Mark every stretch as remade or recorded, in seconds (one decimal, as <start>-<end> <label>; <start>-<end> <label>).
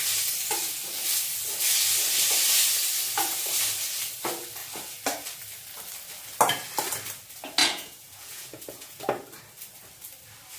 0.0-7.6 recorded; 7.6-9.0 remade; 9.0-10.6 recorded